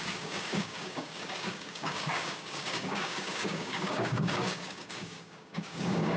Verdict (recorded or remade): remade